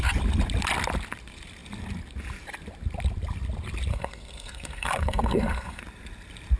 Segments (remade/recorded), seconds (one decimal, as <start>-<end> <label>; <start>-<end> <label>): 0.0-3.9 recorded; 3.9-5.8 remade; 5.8-6.6 recorded